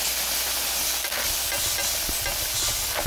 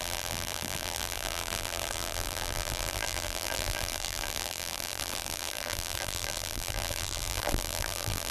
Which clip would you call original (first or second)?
first